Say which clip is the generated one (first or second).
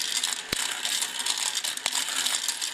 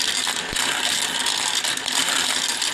second